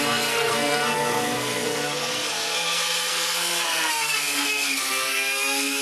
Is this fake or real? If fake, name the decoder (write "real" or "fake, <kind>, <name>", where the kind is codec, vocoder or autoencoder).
fake, codec, SNAC